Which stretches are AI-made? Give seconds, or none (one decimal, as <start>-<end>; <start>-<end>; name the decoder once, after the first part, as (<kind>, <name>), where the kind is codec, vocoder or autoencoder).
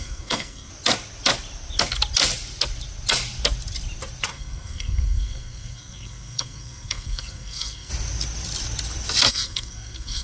0.0-0.7 (codec, SNAC); 4.3-7.9; 9.3-10.2